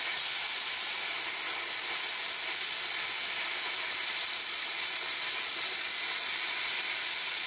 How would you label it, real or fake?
real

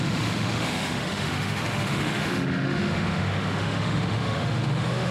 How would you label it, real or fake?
fake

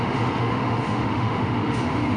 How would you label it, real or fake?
fake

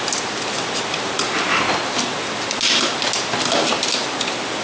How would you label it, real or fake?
real